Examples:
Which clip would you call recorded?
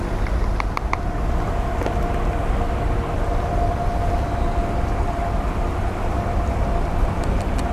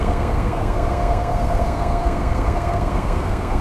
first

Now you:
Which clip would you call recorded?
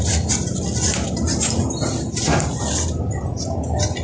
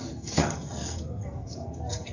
first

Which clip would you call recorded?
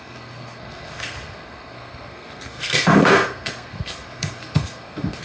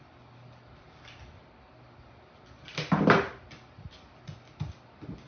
second